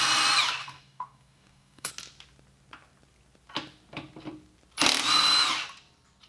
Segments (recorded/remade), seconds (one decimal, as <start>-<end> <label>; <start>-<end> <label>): 0.0-0.6 recorded; 0.6-1.9 remade; 1.9-6.3 recorded